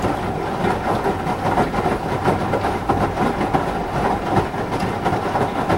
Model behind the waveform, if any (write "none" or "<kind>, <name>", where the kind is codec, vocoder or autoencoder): none